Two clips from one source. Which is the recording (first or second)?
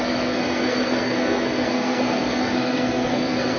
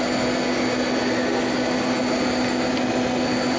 second